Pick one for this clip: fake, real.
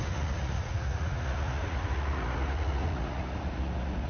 fake